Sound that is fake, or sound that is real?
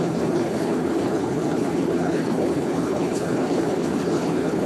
fake